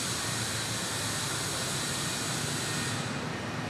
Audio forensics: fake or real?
real